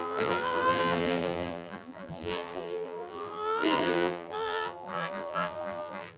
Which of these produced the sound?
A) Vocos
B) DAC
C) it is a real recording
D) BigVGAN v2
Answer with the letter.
D